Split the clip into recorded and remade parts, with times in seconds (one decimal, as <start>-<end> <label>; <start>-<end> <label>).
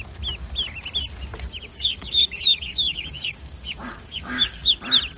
0.0-1.7 recorded; 1.7-4.8 remade; 4.8-5.2 recorded